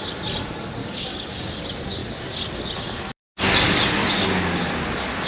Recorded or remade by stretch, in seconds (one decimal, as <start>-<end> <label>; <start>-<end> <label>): 0.0-0.8 recorded; 0.8-1.5 remade; 1.5-5.3 recorded